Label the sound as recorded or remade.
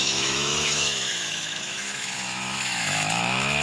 remade